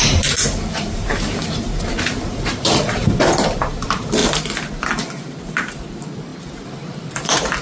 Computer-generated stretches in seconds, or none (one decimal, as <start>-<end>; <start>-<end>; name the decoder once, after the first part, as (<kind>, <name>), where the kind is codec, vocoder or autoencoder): 0.0-1.4 (vocoder, BigVGAN v2); 2.7-4.2; 5.4-7.6